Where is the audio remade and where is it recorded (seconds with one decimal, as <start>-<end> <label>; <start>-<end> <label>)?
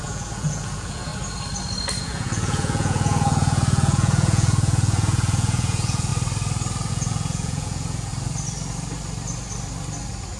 0.0-1.1 remade; 1.1-2.0 recorded; 2.0-6.1 remade; 6.1-6.9 recorded; 6.9-8.1 remade; 8.1-10.4 recorded